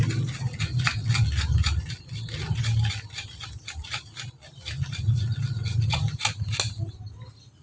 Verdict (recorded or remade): recorded